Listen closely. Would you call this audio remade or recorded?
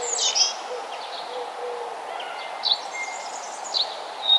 recorded